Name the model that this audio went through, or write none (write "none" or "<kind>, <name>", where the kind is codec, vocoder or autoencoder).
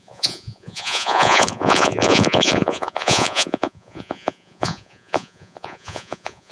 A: vocoder, Vocos